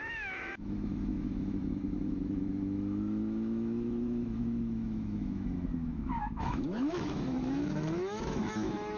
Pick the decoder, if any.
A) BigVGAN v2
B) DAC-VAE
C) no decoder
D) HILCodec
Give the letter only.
B